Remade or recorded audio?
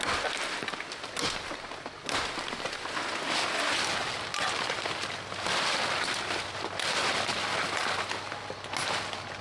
recorded